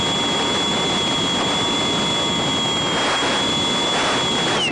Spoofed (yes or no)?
no